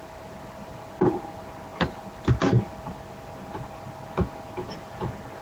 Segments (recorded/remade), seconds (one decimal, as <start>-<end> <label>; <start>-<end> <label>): 0.0-5.4 recorded

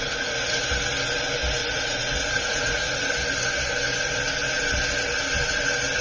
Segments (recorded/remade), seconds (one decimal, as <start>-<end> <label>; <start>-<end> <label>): 0.0-1.6 recorded; 1.6-3.1 remade; 3.1-6.0 recorded

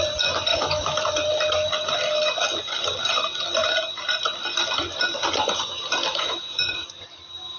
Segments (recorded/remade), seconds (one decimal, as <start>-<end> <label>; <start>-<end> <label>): 0.0-0.5 recorded; 0.5-1.0 remade; 1.0-6.1 recorded; 6.1-7.0 remade; 7.0-7.6 recorded

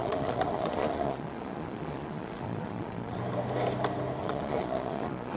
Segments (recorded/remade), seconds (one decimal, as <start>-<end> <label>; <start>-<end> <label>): 0.0-3.2 remade; 3.2-4.2 recorded; 4.2-5.4 remade

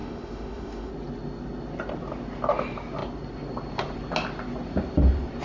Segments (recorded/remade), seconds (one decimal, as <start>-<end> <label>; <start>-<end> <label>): 0.0-0.9 remade; 0.9-5.4 recorded

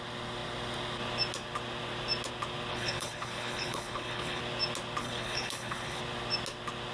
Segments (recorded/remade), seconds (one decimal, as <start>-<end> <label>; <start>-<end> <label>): 0.0-2.7 recorded; 2.7-4.4 remade; 4.4-5.0 recorded; 5.0-6.0 remade; 6.0-6.9 recorded